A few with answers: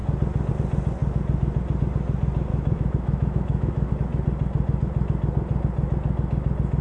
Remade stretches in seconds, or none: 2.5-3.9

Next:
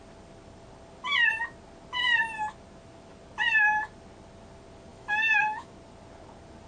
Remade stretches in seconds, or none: 4.9-5.7

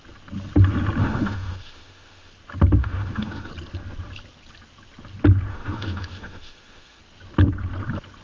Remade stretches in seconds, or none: 1.0-2.3; 2.8-3.5; 5.5-7.0